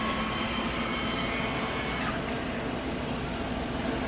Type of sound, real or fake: real